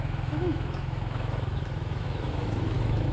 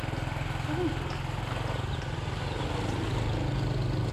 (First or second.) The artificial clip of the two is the first